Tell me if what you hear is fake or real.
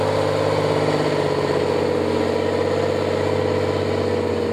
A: real